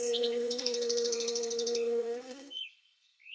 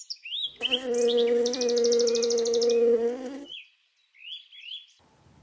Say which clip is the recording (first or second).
second